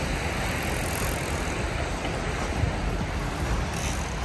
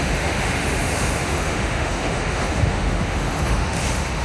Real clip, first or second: first